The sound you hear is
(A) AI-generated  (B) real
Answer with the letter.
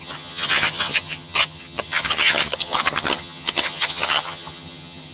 A